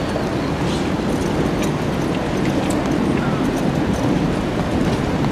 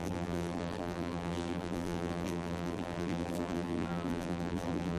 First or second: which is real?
first